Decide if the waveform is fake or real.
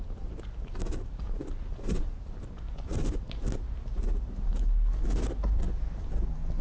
real